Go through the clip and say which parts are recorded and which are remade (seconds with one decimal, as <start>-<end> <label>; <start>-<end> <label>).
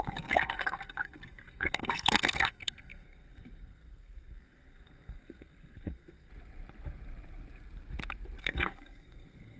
0.0-6.3 remade; 6.3-8.4 recorded; 8.4-9.6 remade